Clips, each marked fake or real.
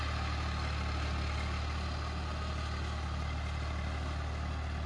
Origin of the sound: real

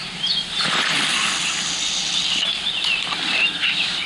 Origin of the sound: real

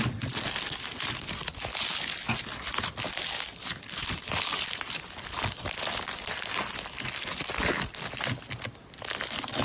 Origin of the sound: real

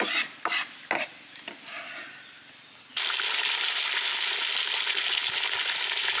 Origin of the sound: real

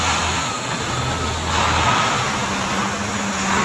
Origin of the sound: real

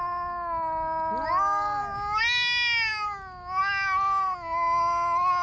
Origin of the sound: real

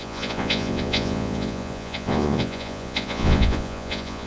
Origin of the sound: fake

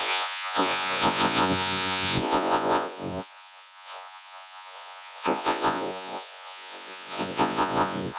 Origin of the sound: fake